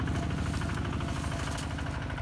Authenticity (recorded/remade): recorded